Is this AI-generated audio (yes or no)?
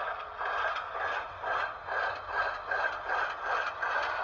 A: no